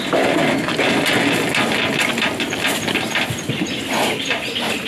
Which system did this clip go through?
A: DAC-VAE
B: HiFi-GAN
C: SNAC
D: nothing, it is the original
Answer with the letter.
D